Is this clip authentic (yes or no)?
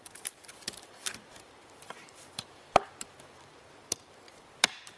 no